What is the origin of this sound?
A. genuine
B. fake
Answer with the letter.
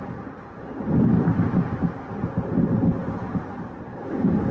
A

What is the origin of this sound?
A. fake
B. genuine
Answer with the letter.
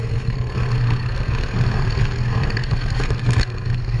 A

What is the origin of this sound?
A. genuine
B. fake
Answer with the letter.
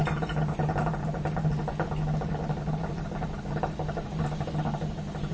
A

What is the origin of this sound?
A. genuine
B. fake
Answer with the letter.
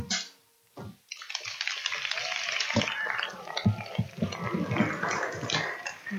A